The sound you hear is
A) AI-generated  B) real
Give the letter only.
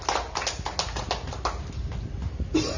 B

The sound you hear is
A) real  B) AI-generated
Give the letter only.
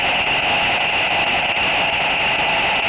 A